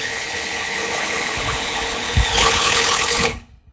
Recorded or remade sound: remade